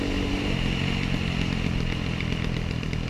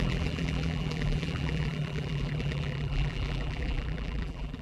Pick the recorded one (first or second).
first